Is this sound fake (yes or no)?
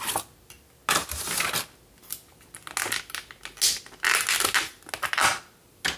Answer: no